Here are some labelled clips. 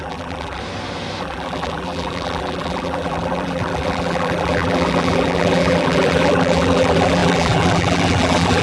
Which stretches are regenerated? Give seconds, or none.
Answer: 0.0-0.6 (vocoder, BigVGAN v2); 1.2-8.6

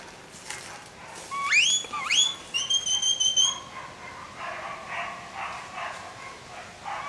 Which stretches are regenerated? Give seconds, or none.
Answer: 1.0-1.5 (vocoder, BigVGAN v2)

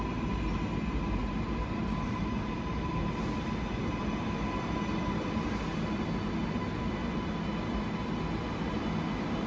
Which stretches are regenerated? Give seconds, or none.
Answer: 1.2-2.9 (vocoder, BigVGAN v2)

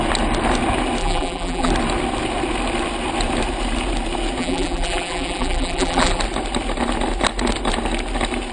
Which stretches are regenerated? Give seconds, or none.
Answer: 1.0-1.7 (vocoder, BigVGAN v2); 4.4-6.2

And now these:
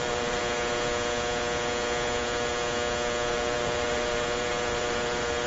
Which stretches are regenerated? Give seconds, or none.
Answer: 0.0-0.4 (vocoder, BigVGAN v2); 3.3-5.5

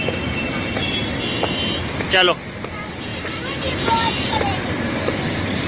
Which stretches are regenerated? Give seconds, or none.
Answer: 0.0-1.0 (vocoder, BigVGAN v2); 2.7-5.7

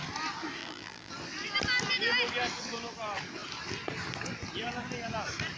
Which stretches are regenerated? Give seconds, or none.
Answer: 0.6-1.1 (vocoder, BigVGAN v2)